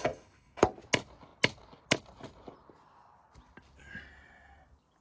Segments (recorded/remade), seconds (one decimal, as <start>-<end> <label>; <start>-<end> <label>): 0.0-0.6 remade; 0.6-5.0 recorded